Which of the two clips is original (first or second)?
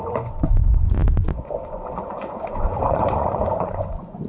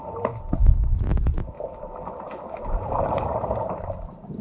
second